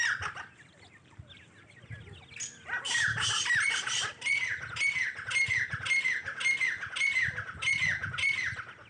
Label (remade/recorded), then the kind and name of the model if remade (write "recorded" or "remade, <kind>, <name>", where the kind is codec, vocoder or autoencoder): recorded